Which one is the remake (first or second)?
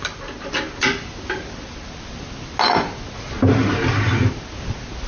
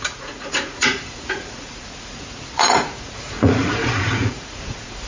second